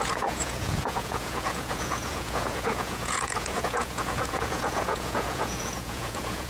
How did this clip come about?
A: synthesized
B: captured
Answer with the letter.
A